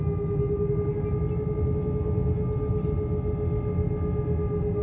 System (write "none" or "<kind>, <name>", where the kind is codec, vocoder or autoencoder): none